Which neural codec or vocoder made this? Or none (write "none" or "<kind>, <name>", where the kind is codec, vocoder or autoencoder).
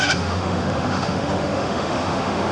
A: autoencoder, DAC-VAE